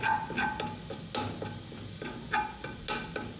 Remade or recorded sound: recorded